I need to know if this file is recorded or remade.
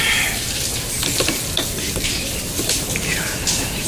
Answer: recorded